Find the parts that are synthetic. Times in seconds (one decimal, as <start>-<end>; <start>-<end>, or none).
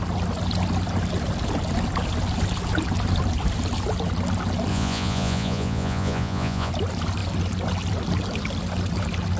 4.7-6.7